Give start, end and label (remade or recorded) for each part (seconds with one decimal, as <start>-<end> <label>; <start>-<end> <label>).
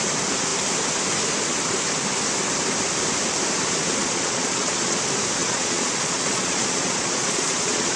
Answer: 0.0-4.0 recorded; 4.0-5.0 remade; 5.0-5.4 recorded; 5.4-8.0 remade